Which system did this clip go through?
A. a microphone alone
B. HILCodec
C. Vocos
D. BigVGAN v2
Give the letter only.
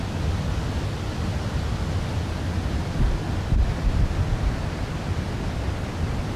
A